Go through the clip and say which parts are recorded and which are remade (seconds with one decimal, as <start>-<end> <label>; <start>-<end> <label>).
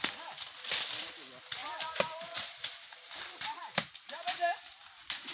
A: 0.0-1.6 recorded; 1.6-4.8 remade; 4.8-5.3 recorded